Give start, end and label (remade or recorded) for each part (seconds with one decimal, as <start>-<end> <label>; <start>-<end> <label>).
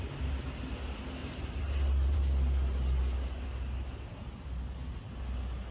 0.0-1.2 recorded; 1.2-2.2 remade; 2.2-5.7 recorded